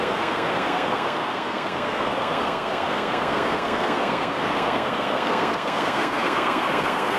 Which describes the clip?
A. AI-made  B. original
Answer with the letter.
A